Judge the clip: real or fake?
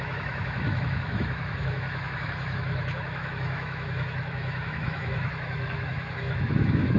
fake